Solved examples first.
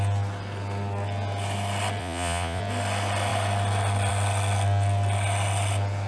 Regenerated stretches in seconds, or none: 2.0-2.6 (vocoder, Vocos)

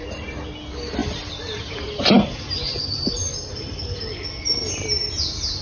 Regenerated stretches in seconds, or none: none

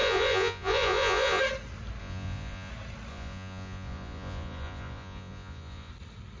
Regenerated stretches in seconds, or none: 0.0-1.4 (vocoder, Vocos); 2.0-2.7; 3.1-5.9

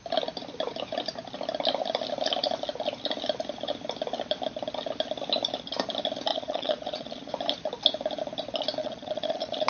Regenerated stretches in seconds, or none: 6.3-7.3 (vocoder, Vocos); 8.8-9.7

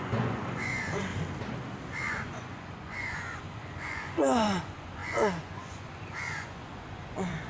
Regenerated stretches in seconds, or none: 0.0-1.1 (vocoder, Vocos); 2.1-7.5